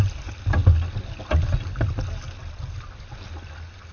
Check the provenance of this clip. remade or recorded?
recorded